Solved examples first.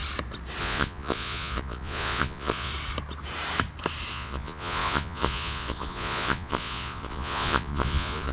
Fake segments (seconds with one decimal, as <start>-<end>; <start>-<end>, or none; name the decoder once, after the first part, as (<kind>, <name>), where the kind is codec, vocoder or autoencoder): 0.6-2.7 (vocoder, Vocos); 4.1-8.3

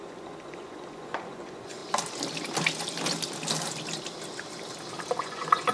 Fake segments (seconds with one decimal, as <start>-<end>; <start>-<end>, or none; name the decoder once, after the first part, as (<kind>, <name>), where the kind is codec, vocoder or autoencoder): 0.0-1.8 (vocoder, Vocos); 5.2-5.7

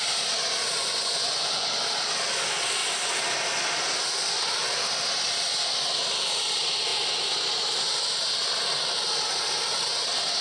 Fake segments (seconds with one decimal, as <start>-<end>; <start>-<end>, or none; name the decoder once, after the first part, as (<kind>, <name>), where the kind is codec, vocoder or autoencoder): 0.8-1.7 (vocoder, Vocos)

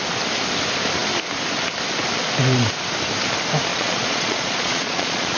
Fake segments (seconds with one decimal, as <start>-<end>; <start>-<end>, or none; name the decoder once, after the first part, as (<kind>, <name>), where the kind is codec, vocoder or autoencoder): 3.7-5.4 (vocoder, Vocos)

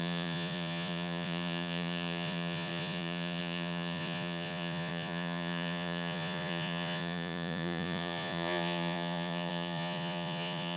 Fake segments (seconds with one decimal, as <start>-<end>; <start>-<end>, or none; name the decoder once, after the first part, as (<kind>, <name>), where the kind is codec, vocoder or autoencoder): 0.0-10.8 (vocoder, Vocos)

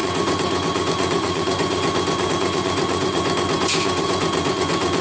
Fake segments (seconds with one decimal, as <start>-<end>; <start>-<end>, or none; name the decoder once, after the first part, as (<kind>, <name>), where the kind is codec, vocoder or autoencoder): 0.0-5.0 (vocoder, Vocos)